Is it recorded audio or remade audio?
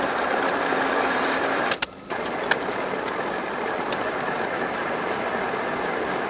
remade